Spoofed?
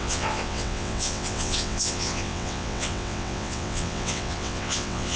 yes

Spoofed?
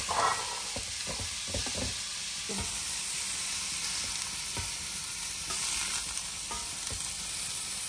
no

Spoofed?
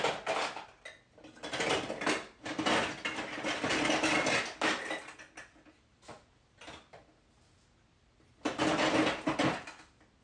no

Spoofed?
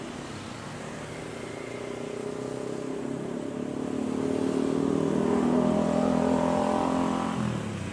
no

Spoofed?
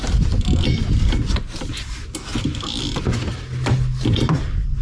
no